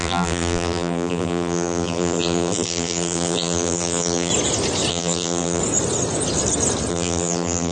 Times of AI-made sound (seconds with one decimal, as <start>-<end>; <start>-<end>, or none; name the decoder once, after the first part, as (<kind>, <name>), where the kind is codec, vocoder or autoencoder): 0.0-4.3 (vocoder, BigVGAN v2); 4.9-5.6; 6.9-7.7